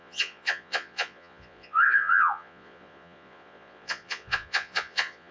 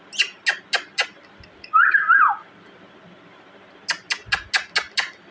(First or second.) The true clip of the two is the second